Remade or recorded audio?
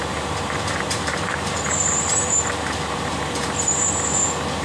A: remade